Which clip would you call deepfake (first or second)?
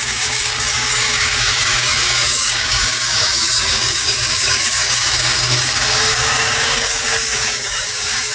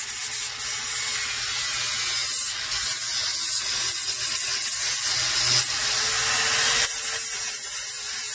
first